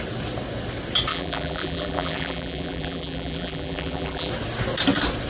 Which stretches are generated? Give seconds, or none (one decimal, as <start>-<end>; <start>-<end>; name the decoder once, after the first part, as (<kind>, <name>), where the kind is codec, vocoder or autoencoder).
1.1-4.3 (vocoder, BigVGAN v2)